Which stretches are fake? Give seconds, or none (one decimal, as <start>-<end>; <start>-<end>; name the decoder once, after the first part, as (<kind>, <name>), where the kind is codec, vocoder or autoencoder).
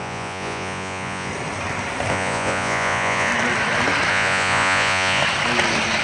0.0-1.3 (vocoder, Vocos); 2.1-3.3; 4.1-5.2